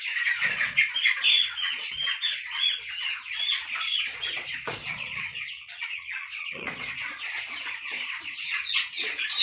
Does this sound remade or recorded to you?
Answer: remade